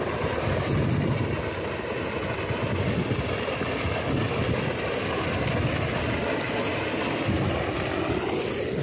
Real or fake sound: real